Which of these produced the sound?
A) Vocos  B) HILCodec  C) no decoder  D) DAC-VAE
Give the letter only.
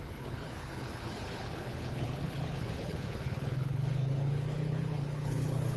B